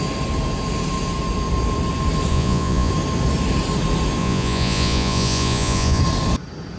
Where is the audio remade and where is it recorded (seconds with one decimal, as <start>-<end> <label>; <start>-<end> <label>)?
0.0-2.3 recorded; 2.3-2.9 remade; 2.9-4.2 recorded; 4.2-6.0 remade; 6.0-6.8 recorded